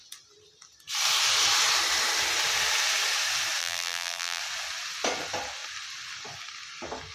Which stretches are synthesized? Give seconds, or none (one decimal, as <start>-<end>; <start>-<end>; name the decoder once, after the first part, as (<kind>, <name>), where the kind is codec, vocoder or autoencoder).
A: 3.6-4.4 (vocoder, BigVGAN v2)